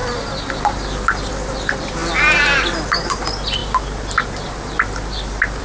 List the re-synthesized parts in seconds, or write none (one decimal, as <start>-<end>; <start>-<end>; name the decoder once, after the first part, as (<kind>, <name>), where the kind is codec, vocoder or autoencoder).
none